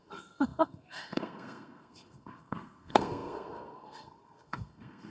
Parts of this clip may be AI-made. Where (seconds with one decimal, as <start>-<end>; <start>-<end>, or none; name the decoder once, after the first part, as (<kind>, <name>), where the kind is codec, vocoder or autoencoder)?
0.0-5.1 (codec, SNAC)